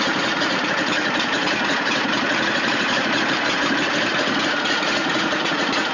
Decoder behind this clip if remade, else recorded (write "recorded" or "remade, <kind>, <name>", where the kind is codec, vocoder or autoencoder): remade, vocoder, Vocos